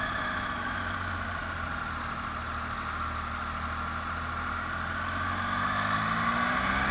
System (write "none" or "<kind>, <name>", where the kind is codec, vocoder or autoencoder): none